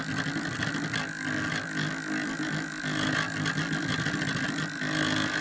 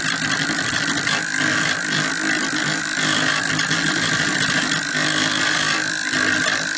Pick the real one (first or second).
first